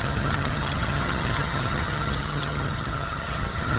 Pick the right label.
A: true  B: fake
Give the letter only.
B